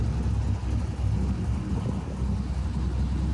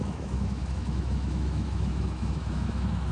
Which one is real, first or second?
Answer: first